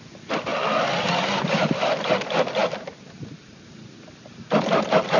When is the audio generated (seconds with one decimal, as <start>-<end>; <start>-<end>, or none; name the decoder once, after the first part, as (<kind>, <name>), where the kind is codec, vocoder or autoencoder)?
none